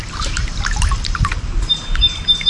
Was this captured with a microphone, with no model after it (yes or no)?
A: yes